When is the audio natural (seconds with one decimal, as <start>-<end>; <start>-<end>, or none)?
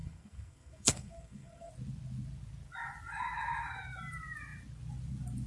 1.7-5.5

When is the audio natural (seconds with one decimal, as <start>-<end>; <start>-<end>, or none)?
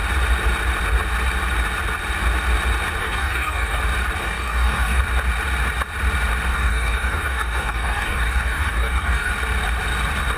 0.0-3.0; 3.8-4.2; 5.0-6.5; 9.3-10.4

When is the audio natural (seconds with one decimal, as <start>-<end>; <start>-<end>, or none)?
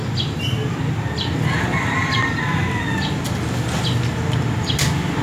0.0-5.2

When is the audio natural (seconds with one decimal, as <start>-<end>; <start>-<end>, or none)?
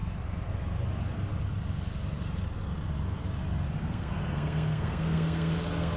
0.0-3.8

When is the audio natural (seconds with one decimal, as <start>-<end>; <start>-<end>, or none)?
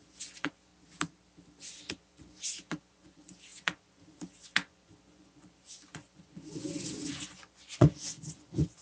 0.7-1.6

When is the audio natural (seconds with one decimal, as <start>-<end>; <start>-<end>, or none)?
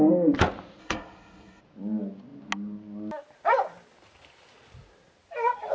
0.0-0.8; 1.6-5.7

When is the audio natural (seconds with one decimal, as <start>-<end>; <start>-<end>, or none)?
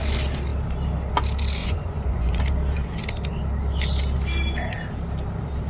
0.0-1.6; 2.4-5.7